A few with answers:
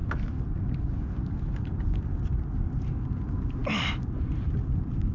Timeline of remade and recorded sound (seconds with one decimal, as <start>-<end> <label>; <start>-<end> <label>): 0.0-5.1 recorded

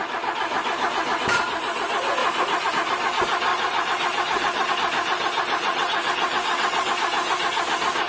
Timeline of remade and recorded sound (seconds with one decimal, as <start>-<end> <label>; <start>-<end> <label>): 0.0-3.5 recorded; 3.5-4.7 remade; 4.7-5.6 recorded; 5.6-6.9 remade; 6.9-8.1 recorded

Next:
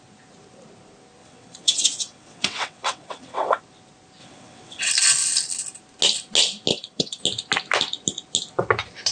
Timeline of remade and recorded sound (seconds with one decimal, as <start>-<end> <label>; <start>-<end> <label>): 0.0-1.2 recorded; 1.2-3.6 remade; 3.6-4.2 recorded; 4.2-4.9 remade; 4.9-6.7 recorded; 6.7-7.2 remade; 7.2-9.1 recorded

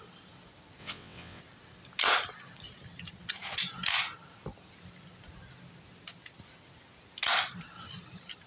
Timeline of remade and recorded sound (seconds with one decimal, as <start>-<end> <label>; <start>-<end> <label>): 0.0-0.8 recorded; 0.8-1.4 remade; 1.4-8.5 recorded

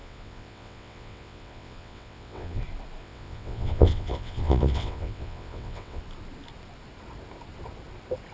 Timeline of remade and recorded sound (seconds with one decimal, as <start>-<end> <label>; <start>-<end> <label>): 0.0-2.6 remade; 2.6-3.0 recorded; 3.0-6.0 remade; 6.0-8.3 recorded

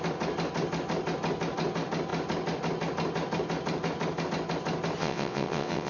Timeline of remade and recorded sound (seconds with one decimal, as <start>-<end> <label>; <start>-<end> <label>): 0.0-5.0 recorded; 5.0-5.9 remade

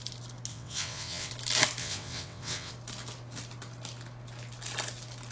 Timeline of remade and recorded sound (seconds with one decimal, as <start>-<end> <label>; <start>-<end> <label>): 0.0-0.5 recorded; 0.5-1.3 remade; 1.3-1.8 recorded; 1.8-2.7 remade; 2.7-5.3 recorded

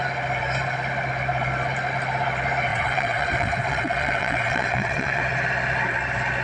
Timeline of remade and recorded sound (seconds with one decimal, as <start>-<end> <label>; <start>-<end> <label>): 0.0-2.7 recorded; 2.7-5.2 remade; 5.2-6.4 recorded